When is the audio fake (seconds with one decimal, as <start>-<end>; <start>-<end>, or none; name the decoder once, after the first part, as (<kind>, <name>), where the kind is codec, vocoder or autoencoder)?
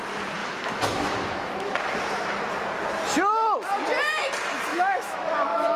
0.4-1.7 (autoencoder, DAC-VAE); 4.7-5.8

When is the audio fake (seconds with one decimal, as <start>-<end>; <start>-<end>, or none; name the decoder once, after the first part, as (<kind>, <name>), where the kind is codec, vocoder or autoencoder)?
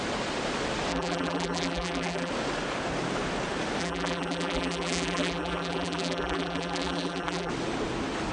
0.9-2.3 (vocoder, BigVGAN v2); 3.8-7.5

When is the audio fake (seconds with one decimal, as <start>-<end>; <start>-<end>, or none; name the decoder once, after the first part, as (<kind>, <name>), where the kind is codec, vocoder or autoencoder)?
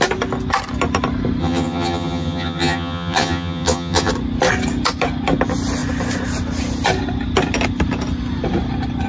1.4-4.1 (vocoder, HiFi-GAN)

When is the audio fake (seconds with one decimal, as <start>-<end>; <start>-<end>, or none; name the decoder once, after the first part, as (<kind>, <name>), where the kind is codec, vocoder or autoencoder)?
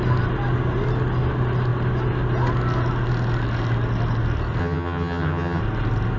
4.6-5.6 (vocoder, HiFi-GAN)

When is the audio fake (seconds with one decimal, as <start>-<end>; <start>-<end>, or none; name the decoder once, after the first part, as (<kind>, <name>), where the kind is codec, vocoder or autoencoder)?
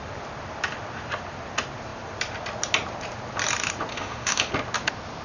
3.9-4.5 (autoencoder, DAC-VAE)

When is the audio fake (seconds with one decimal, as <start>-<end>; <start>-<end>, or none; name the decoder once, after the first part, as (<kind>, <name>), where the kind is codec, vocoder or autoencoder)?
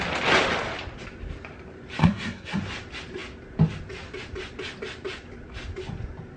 2.0-2.6 (codec, SNAC)